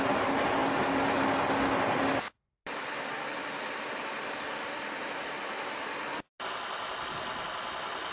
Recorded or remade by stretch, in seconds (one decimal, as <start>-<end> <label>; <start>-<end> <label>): 0.0-8.1 recorded